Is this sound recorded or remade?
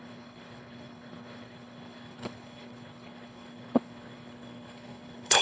remade